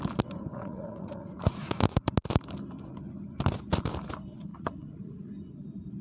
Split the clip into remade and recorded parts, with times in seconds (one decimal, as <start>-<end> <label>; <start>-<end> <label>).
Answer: 0.0-0.5 recorded; 0.5-2.1 remade; 2.1-4.5 recorded; 4.5-5.3 remade; 5.3-6.0 recorded